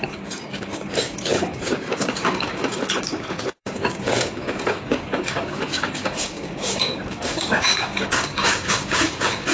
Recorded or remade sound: remade